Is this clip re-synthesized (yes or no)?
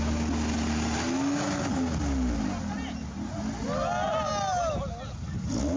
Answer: no